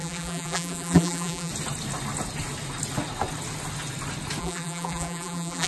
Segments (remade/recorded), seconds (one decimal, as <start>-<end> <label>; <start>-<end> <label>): 0.0-1.5 remade; 1.5-4.4 recorded; 4.4-5.7 remade